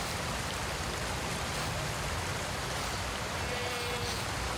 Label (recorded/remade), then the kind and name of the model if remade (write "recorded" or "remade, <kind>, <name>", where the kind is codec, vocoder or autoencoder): recorded